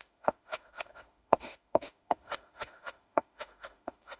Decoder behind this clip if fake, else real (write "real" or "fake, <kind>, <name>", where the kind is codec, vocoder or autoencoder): fake, autoencoder, DAC-VAE